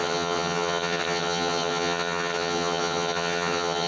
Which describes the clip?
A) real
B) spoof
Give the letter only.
B